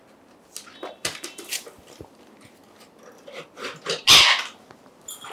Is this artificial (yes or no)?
no